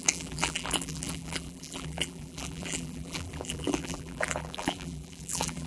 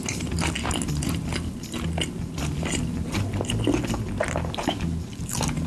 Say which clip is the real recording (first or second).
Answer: second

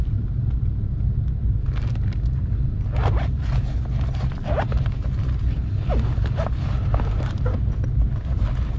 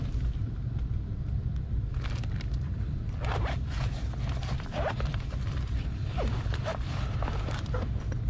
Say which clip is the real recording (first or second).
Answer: first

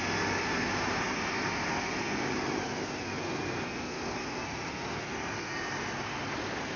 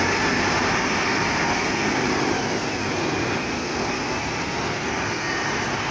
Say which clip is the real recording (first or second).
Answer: first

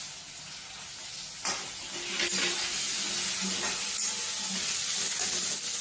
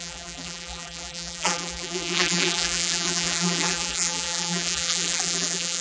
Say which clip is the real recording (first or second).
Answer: first